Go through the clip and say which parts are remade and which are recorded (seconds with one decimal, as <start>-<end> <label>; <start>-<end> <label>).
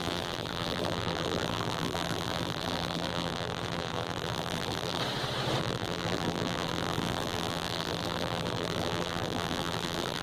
0.0-5.0 remade; 5.0-5.6 recorded; 5.6-10.2 remade